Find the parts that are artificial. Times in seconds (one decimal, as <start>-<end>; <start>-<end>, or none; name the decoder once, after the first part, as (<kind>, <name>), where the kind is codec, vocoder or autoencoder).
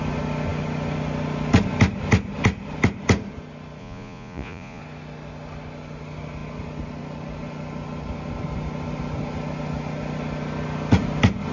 3.8-4.8 (vocoder, Vocos)